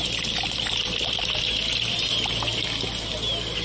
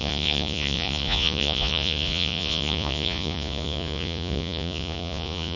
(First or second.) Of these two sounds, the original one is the first